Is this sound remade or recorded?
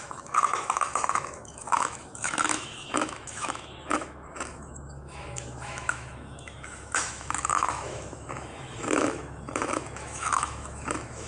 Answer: remade